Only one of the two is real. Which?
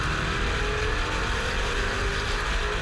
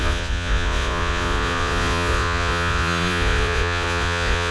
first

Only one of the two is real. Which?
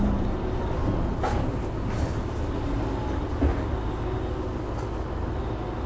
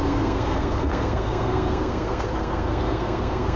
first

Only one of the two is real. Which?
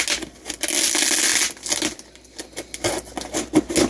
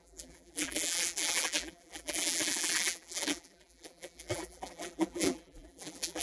first